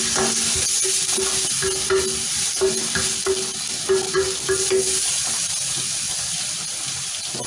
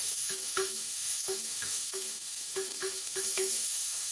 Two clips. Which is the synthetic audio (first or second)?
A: second